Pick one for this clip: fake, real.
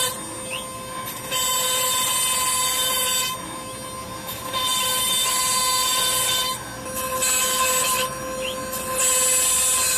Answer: real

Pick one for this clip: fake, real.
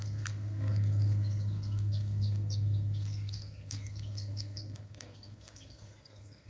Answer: fake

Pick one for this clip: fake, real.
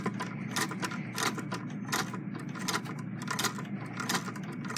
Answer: real